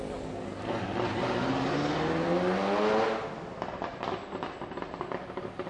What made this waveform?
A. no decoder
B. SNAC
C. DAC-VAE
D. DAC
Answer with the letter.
A